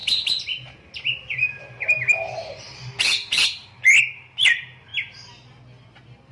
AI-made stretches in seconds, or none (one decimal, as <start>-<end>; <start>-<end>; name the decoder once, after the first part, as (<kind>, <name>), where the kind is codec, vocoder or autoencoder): none